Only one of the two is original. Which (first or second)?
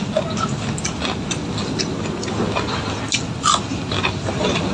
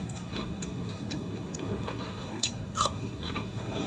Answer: first